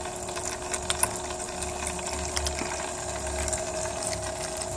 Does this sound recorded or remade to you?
recorded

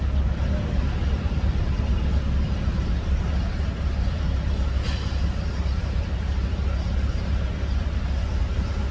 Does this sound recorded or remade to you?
recorded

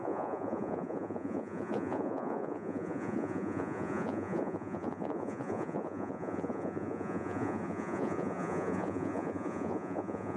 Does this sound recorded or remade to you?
remade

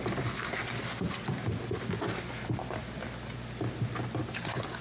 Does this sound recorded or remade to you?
recorded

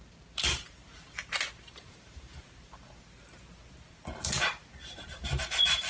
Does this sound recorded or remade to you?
remade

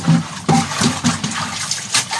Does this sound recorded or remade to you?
recorded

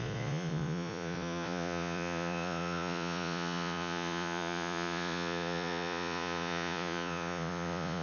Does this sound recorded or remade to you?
remade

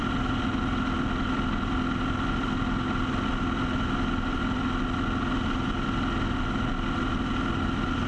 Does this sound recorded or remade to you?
recorded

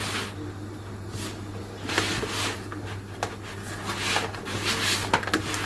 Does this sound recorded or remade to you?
recorded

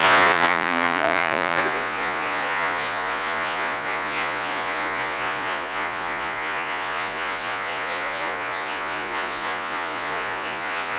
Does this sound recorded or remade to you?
remade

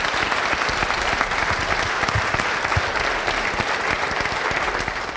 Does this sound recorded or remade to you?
recorded